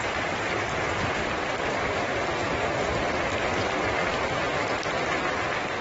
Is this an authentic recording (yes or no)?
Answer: yes